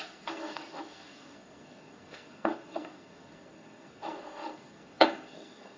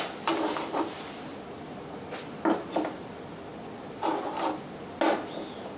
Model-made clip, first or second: first